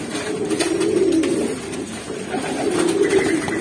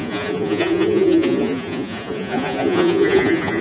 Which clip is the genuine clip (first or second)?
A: first